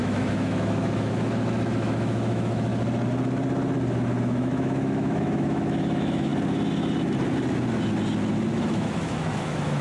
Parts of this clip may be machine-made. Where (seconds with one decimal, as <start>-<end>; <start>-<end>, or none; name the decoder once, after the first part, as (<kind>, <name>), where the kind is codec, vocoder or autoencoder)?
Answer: 0.0-2.7 (autoencoder, DAC-VAE); 4.2-6.3; 8.5-9.8